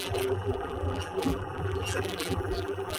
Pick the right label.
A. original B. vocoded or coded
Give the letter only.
B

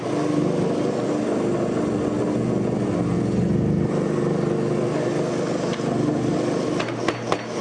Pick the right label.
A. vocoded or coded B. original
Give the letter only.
B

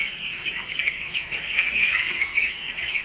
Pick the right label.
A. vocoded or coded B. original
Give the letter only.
A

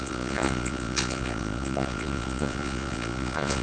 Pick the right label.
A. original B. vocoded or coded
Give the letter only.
B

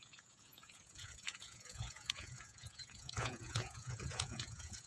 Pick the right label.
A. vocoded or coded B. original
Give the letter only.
A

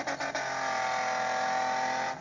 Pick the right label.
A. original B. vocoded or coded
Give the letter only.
A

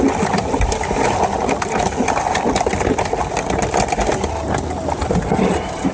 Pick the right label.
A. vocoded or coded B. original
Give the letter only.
B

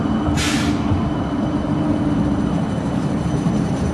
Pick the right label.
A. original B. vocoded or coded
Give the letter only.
B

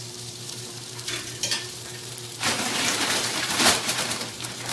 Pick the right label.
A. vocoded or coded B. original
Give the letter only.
A